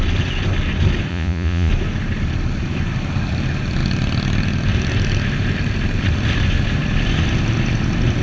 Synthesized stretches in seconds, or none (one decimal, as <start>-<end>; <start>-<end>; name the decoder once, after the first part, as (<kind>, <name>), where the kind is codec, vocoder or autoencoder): 1.1-1.7 (vocoder, Vocos)